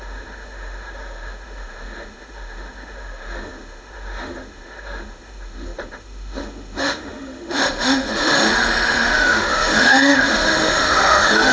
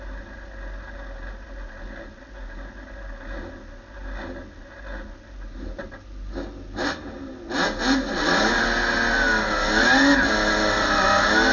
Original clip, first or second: second